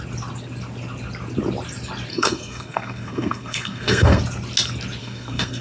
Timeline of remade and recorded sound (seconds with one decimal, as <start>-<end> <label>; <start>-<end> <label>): 0.0-2.1 recorded; 2.1-4.2 remade; 4.2-5.0 recorded; 5.0-5.6 remade